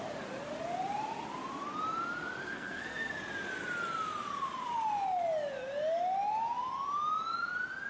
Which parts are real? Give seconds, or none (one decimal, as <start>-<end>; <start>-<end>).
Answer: 0.0-2.4; 3.1-7.9